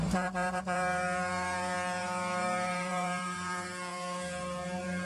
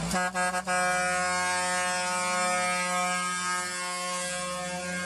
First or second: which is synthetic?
first